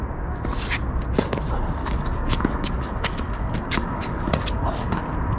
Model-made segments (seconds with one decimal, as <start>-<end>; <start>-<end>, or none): 1.8-5.0